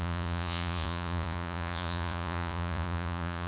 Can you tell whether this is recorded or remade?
remade